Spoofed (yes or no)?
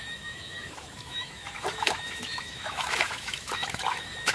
yes